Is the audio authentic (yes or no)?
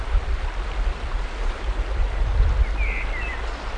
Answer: yes